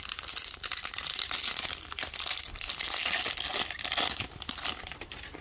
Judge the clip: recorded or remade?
remade